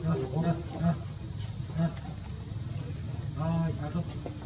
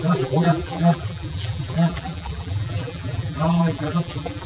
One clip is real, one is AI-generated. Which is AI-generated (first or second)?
second